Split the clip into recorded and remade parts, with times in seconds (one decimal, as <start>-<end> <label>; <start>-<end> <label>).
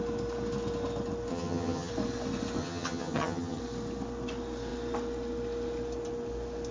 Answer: 0.0-1.3 recorded; 1.3-1.9 remade; 1.9-2.6 recorded; 2.6-3.6 remade; 3.6-6.7 recorded